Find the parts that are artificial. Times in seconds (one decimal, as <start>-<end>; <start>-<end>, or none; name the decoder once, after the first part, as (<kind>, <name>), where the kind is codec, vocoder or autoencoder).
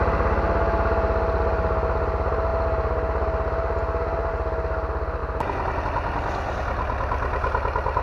none